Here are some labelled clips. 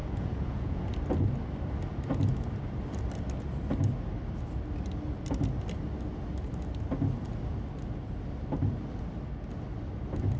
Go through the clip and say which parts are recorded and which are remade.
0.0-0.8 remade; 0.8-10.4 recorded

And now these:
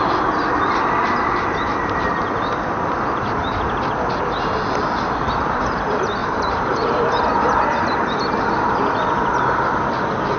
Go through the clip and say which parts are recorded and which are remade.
0.0-6.2 recorded; 6.2-7.1 remade; 7.1-10.4 recorded

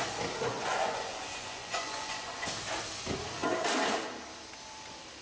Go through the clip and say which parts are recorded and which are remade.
0.0-0.5 recorded; 0.5-2.5 remade; 2.5-5.2 recorded

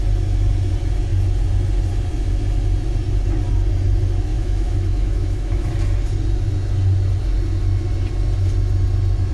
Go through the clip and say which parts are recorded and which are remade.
0.0-4.3 recorded; 4.3-5.7 remade; 5.7-9.3 recorded